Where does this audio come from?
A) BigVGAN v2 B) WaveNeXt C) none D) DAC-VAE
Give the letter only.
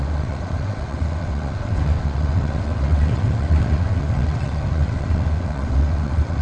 B